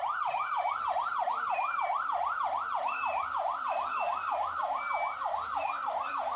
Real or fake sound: real